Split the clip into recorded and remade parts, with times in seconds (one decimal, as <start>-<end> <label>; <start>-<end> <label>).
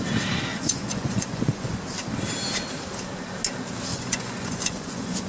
0.0-0.5 recorded; 0.5-1.8 remade; 1.8-3.9 recorded; 3.9-5.3 remade